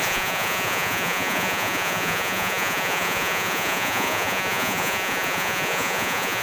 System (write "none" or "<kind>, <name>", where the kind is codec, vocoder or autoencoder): vocoder, Vocos